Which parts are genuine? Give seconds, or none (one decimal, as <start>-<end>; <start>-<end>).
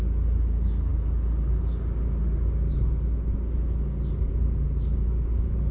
0.0-5.7